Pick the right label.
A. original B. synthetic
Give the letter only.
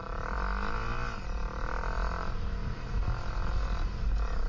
A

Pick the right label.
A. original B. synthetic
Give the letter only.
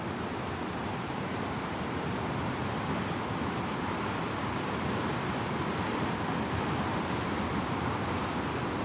A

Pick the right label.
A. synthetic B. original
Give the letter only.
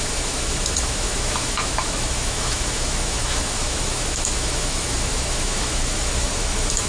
A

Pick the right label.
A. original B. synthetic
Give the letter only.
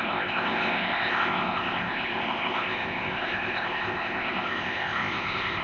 B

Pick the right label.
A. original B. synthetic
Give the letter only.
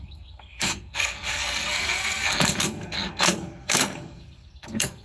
B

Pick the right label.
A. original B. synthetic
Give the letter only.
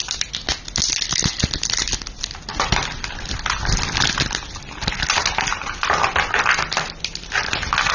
A